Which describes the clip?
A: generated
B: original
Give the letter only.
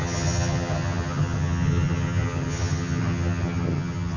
A